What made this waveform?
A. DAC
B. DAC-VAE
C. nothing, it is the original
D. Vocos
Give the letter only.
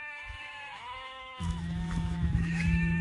B